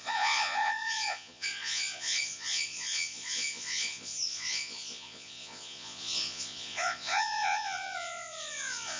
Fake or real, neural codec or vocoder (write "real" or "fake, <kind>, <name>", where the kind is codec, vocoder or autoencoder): fake, vocoder, Vocos